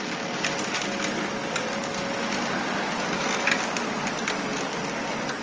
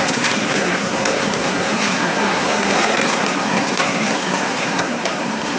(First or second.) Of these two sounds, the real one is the first